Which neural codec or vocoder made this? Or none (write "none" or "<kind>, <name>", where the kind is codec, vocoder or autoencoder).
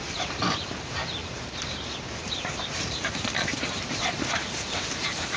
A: vocoder, BigVGAN v2